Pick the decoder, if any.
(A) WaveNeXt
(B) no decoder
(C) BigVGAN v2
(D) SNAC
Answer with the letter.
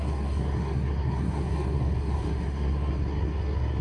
D